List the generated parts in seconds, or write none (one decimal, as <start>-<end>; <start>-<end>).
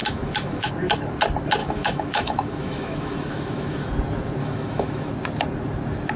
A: 0.0-0.7; 1.6-3.9; 4.4-5.1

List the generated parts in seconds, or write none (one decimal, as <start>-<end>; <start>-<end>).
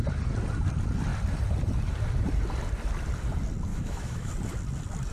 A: 3.7-4.3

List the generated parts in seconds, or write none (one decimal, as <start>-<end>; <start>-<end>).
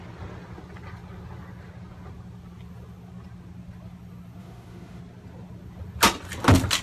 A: 4.4-5.0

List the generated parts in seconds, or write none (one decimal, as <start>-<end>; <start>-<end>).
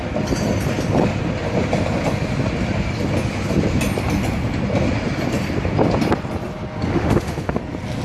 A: 6.9-7.6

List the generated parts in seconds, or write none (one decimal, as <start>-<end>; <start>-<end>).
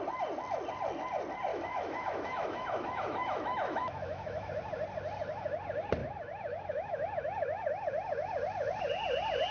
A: 1.5-4.5; 6.0-7.7